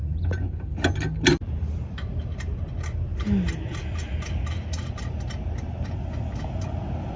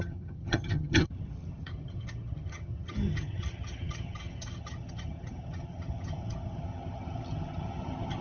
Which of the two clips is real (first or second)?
first